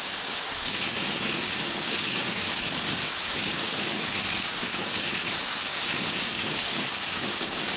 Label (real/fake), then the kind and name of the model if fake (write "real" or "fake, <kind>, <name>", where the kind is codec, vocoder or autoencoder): fake, codec, DAC